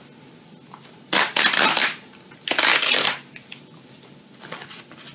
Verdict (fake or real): real